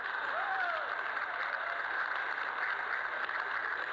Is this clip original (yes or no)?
yes